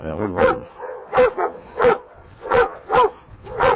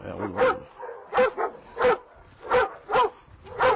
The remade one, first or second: first